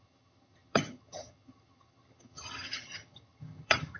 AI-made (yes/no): yes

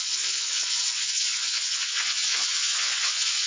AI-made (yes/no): yes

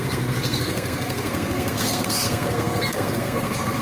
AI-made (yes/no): yes